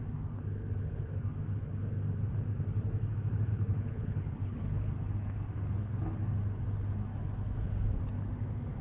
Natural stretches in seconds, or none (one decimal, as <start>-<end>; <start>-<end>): 0.0-3.5; 4.9-8.8